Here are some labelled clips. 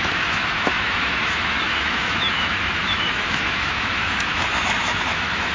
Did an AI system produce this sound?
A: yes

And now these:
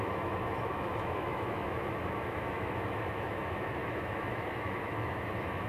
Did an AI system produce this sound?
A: yes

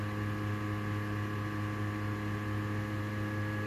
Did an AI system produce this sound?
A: no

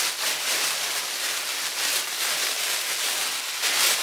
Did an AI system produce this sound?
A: no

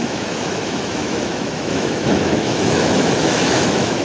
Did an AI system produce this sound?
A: yes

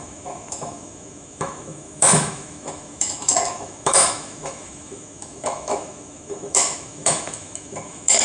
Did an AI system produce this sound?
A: yes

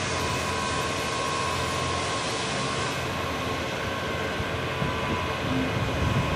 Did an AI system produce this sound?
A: no